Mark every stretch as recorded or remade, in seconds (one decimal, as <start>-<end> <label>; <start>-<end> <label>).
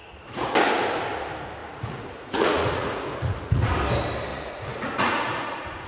0.0-0.5 remade; 0.5-1.6 recorded; 1.6-3.7 remade; 3.7-4.3 recorded; 4.3-5.9 remade